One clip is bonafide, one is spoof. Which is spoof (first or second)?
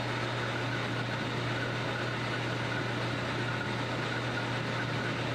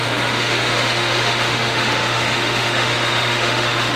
second